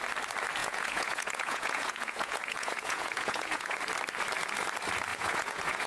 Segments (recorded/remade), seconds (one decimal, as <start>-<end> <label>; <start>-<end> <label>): 0.0-0.6 recorded; 0.6-3.8 remade; 3.8-5.1 recorded; 5.1-5.9 remade